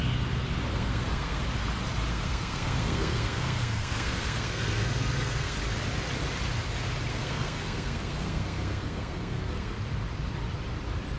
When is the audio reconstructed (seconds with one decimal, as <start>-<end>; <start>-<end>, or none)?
0.7-1.4; 2.1-5.6; 7.1-9.8